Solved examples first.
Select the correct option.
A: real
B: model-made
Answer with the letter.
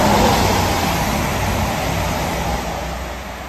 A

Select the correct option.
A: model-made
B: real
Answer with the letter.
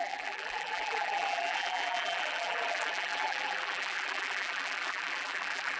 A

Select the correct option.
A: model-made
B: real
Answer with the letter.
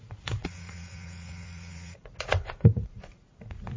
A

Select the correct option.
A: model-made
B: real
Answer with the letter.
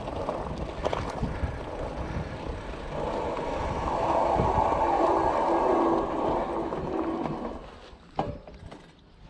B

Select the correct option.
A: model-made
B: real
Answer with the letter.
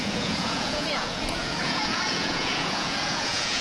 A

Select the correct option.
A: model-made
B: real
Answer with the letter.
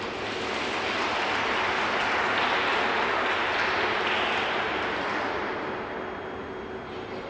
B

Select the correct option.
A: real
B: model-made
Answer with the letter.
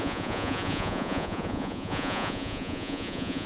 B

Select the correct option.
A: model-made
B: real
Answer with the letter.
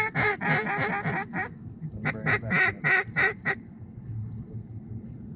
B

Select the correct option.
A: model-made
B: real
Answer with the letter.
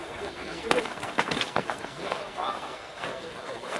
A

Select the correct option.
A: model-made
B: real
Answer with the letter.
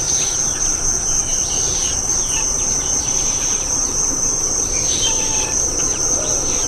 A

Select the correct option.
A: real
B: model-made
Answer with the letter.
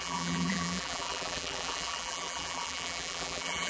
B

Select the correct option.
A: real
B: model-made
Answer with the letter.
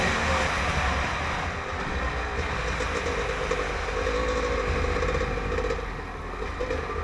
A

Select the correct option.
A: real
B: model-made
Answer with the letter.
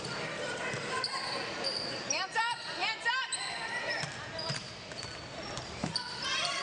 B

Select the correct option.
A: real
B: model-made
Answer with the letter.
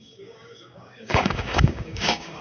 B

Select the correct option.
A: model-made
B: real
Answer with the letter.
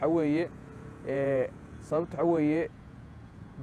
A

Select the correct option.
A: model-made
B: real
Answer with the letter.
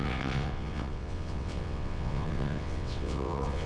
A